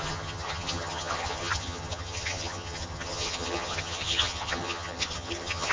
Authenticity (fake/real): fake